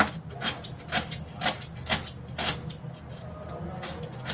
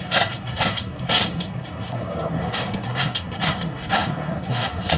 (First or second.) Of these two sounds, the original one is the first